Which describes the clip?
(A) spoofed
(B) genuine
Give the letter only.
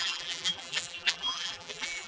A